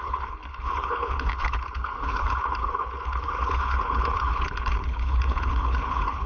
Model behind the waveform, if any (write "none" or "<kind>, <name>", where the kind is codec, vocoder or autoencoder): codec, HILCodec